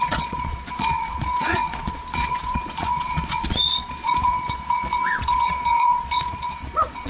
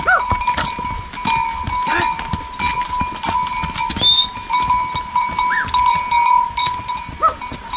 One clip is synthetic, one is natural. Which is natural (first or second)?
second